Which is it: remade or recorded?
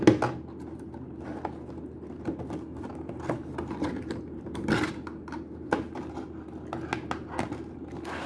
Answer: recorded